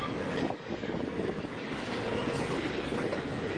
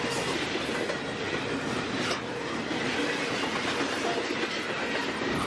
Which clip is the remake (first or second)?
first